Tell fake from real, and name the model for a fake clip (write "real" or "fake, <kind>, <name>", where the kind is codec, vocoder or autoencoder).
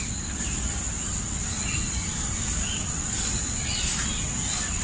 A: real